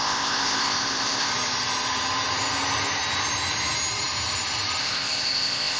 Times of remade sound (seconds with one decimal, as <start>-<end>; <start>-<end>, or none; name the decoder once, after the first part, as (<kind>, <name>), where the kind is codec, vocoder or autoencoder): 0.0-1.3 (codec, ZipCodec); 4.8-5.8